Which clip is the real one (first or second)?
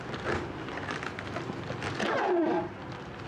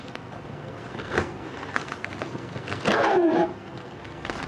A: first